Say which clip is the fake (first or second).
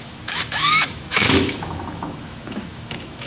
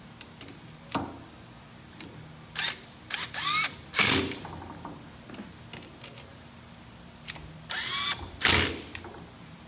first